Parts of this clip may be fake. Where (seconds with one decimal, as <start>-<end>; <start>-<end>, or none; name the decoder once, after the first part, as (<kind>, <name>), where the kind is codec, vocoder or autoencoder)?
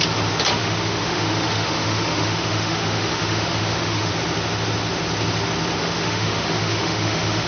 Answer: 0.6-4.1 (autoencoder, DAC-VAE); 5.8-7.5